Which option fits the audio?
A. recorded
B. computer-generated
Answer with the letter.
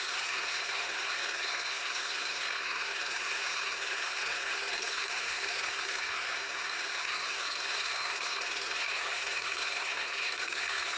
B